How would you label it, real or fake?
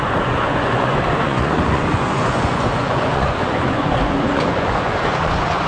fake